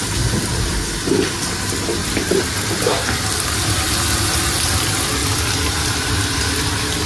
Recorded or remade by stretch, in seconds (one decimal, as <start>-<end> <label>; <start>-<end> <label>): 0.0-7.1 recorded